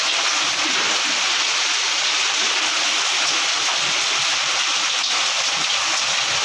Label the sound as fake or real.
fake